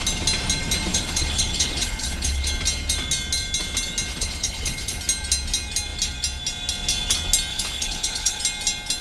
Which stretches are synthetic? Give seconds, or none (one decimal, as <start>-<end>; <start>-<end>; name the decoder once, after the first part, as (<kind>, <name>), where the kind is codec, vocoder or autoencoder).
0.9-2.5 (codec, HILCodec); 4.1-5.0; 7.5-8.4